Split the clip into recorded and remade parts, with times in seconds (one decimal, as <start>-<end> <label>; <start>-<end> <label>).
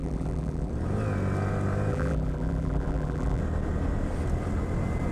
0.0-0.7 remade; 0.7-1.9 recorded; 1.9-3.4 remade; 3.4-5.1 recorded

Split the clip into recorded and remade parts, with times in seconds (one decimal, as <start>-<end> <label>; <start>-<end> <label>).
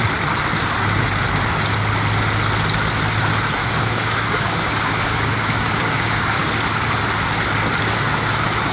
0.0-3.6 recorded; 3.6-6.5 remade; 6.5-8.7 recorded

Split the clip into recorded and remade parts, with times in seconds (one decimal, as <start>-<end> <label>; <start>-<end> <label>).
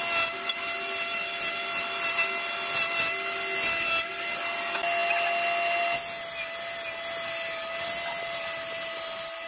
0.0-9.5 recorded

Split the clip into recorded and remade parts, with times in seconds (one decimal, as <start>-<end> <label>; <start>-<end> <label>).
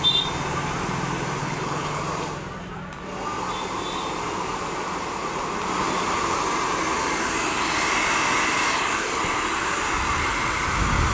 0.0-1.4 recorded; 1.4-2.0 remade; 2.0-11.1 recorded